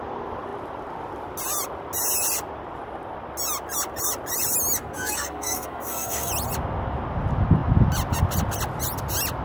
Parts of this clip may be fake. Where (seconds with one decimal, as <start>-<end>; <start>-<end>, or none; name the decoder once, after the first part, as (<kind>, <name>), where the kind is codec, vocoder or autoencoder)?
4.8-6.3 (codec, SNAC)